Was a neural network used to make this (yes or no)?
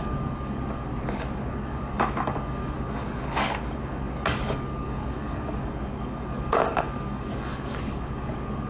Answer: yes